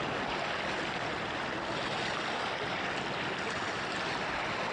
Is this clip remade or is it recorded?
recorded